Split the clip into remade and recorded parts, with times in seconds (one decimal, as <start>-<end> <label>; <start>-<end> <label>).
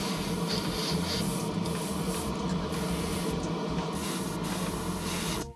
0.0-5.6 recorded